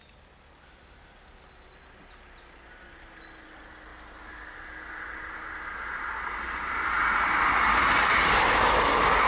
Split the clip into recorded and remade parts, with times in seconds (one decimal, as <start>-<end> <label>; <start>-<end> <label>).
0.0-9.3 recorded